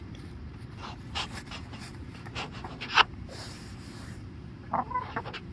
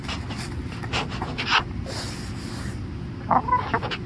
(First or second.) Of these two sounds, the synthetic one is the first